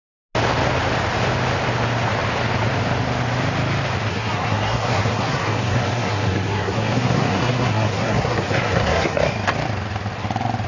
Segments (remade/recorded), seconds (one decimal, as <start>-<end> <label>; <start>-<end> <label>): 0.0-4.1 recorded; 4.1-9.2 remade; 9.2-10.7 recorded